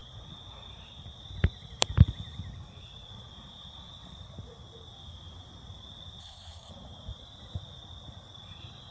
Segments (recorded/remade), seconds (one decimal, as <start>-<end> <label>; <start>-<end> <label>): 0.0-6.2 recorded; 6.2-6.7 remade; 6.7-8.9 recorded